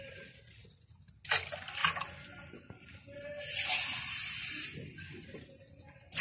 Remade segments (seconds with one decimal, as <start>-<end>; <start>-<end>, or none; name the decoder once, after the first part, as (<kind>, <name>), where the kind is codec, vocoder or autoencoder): 0.0-0.6 (vocoder, BigVGAN v2); 1.3-1.8; 4.0-6.2